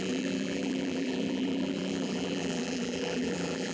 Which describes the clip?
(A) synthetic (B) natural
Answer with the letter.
A